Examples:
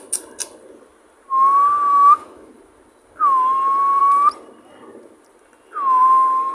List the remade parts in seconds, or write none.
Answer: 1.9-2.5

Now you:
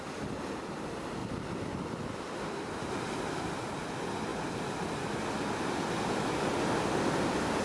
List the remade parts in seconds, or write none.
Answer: 1.2-3.4; 4.3-6.4

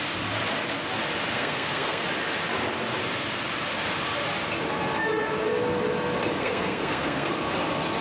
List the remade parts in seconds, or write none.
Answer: 1.3-2.0; 6.4-7.3

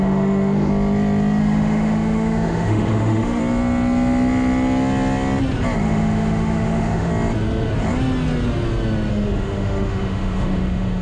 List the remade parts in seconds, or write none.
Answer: 0.0-0.7; 1.4-3.4; 5.8-7.1; 9.1-11.0